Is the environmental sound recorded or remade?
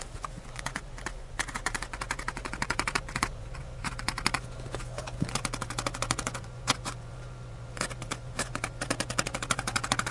remade